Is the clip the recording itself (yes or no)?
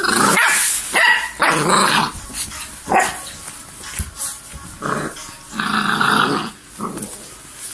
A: yes